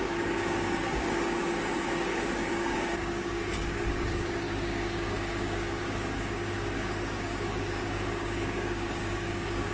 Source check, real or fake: fake